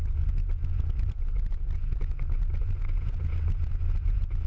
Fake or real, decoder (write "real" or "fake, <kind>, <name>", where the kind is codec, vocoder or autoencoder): fake, vocoder, Vocos